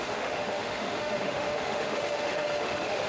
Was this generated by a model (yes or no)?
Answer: yes